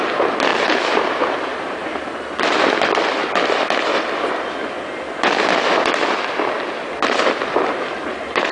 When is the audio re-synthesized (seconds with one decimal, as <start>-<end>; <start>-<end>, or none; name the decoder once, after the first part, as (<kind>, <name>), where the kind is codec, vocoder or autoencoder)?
0.5-1.4 (vocoder, BigVGAN v2); 1.8-2.4